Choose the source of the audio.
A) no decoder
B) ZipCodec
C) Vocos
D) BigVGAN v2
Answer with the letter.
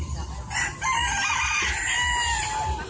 A